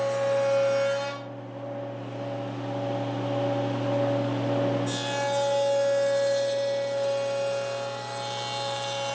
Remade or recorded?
recorded